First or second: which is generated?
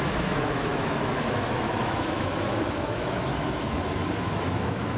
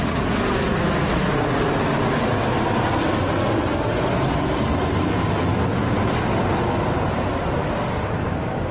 first